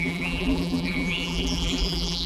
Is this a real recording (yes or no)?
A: no